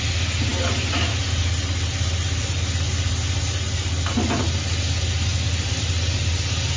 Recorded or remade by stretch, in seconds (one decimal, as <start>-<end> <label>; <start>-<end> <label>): 0.0-6.8 recorded